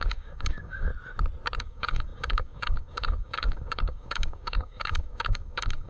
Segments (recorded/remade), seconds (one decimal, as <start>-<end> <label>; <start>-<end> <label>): 0.0-0.9 remade; 0.9-1.6 recorded; 1.6-5.9 remade